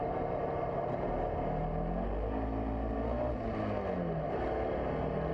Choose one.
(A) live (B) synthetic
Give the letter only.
A